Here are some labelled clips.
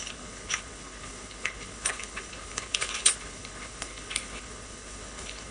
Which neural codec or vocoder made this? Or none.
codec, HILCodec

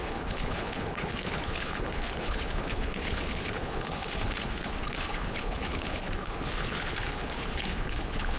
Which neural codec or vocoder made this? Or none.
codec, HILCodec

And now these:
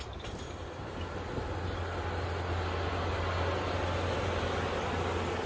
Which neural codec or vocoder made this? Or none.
none